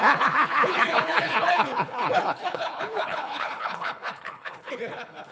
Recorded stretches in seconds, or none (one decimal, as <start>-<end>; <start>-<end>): none